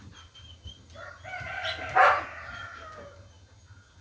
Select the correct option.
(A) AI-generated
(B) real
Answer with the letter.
B